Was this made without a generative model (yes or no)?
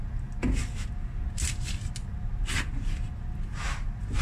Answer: yes